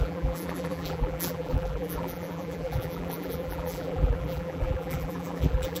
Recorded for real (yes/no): no